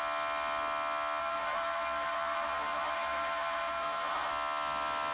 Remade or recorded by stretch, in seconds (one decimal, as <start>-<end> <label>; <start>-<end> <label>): 0.0-1.2 recorded; 1.2-4.3 remade; 4.3-5.1 recorded

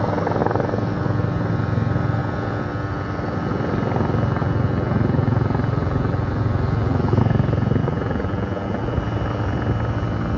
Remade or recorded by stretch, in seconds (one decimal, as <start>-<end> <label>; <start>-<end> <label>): 0.0-4.4 recorded; 4.4-7.2 remade; 7.2-7.8 recorded; 7.8-9.0 remade; 9.0-10.4 recorded

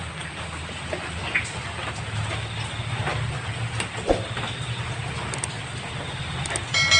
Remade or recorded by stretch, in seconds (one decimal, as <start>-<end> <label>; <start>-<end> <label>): 0.0-7.0 recorded

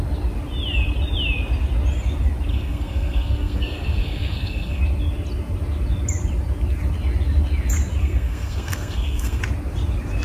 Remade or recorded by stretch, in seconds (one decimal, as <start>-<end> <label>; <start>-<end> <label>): 0.0-2.5 recorded; 2.5-4.8 remade; 4.8-8.0 recorded; 8.0-9.4 remade; 9.4-10.2 recorded

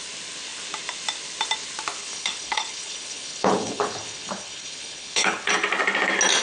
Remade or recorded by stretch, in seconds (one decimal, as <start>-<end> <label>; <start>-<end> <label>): 0.0-2.0 recorded; 2.0-5.5 remade; 5.5-6.4 recorded

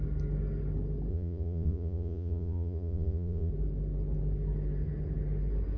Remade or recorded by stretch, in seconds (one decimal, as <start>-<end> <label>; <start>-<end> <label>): 0.0-1.1 recorded; 1.1-3.5 remade; 3.5-5.8 recorded